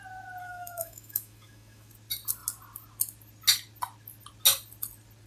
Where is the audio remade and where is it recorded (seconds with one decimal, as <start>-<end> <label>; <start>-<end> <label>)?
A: 0.0-0.4 recorded; 0.4-1.9 remade; 1.9-5.3 recorded